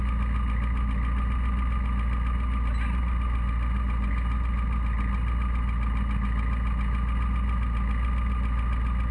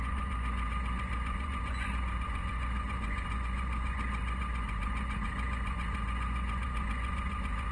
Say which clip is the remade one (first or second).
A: second